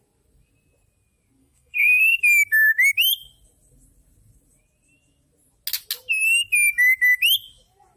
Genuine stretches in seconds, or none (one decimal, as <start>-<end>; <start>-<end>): 0.0-1.4; 2.2-8.0